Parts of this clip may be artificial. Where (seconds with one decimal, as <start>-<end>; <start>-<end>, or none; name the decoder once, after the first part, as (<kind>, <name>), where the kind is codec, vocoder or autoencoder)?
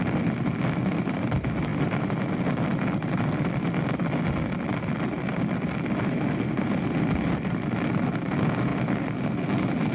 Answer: none